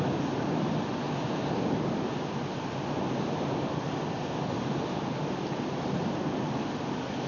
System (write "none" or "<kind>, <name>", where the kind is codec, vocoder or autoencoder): none